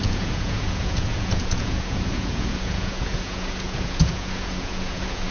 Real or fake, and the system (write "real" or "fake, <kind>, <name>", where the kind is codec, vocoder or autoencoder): fake, vocoder, Vocos